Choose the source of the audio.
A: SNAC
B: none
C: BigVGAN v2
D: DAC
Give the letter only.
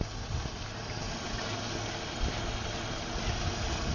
B